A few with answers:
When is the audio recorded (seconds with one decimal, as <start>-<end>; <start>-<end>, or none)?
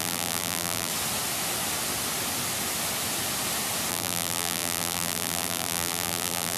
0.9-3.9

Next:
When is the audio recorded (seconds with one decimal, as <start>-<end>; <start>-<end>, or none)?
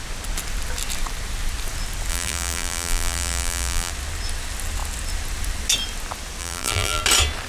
0.0-2.1; 3.9-6.4; 7.0-7.5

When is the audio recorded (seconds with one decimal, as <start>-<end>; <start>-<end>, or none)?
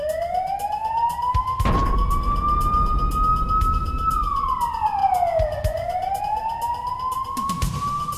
0.0-8.2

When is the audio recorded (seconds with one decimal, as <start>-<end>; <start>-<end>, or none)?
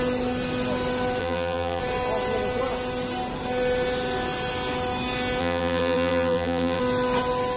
0.0-1.2; 1.8-5.4; 6.8-7.6